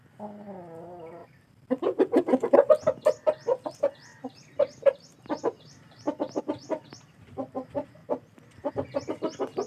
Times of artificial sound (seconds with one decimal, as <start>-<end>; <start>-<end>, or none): 1.2-2.7; 4.1-6.4; 8.0-8.7